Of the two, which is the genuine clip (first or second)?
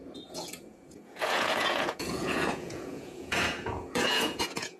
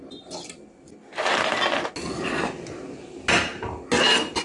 second